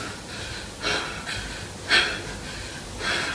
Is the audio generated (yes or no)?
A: no